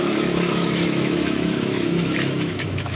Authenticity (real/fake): fake